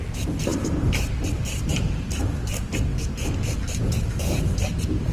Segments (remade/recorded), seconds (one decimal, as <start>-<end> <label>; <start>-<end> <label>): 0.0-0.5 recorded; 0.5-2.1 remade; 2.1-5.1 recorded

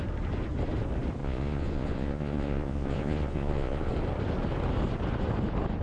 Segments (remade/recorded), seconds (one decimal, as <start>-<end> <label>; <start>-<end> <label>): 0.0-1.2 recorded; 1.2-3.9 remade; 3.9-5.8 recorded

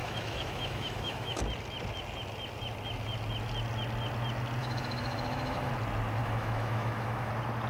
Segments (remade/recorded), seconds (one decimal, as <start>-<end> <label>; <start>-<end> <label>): 0.0-1.4 remade; 1.4-4.6 recorded; 4.6-5.7 remade; 5.7-6.2 recorded; 6.2-7.3 remade; 7.3-7.7 recorded

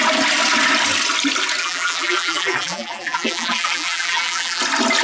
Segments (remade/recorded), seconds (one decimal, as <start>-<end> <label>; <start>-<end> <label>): 0.0-1.6 recorded; 1.6-4.6 remade; 4.6-5.0 recorded